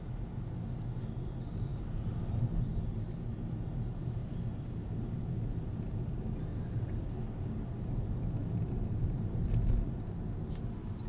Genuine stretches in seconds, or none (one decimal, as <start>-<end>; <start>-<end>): 0.0-1.7; 2.4-4.2; 5.8-6.5; 7.1-8.4; 9.5-11.1